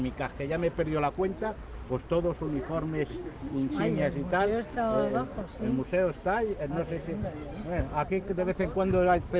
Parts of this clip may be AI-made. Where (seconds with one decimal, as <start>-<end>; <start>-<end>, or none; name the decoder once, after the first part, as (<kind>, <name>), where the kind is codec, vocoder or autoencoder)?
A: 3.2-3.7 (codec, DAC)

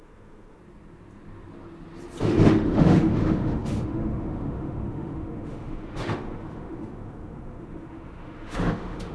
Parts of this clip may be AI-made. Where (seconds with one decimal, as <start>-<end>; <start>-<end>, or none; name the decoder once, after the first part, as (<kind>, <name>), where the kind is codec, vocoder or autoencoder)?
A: 0.0-0.6 (autoencoder, DAC-VAE); 2.2-9.1

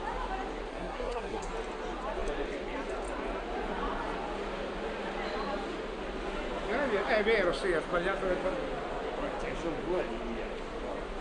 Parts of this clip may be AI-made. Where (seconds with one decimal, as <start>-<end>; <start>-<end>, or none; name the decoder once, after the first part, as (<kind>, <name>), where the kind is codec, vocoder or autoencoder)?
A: 0.7-1.5 (codec, SNAC)

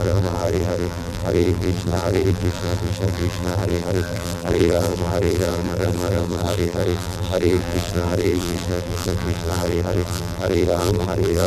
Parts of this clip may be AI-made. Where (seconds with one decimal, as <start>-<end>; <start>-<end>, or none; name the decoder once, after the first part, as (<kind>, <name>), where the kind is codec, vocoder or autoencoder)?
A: 0.0-11.5 (vocoder, BigVGAN v2)

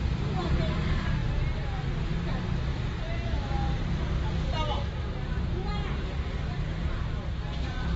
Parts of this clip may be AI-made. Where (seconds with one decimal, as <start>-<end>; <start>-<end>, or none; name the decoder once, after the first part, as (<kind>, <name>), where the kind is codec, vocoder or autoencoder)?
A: 5.6-7.3 (vocoder, BigVGAN v2)